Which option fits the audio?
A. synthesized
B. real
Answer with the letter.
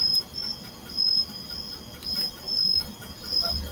B